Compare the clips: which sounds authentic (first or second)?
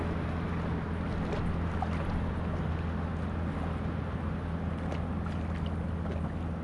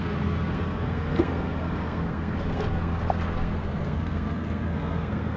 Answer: first